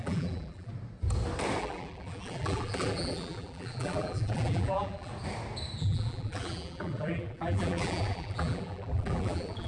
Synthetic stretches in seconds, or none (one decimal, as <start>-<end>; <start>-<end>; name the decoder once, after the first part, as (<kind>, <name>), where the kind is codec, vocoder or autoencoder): 0.0-0.7 (vocoder, BigVGAN v2); 1.6-5.1; 5.8-9.7